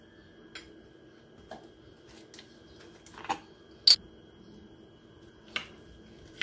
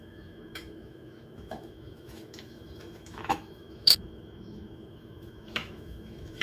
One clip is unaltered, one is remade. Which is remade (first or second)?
second